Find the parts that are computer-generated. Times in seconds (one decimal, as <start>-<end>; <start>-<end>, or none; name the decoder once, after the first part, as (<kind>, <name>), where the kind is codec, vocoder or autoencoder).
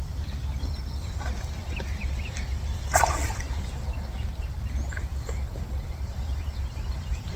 0.0-7.4 (vocoder, BigVGAN v2)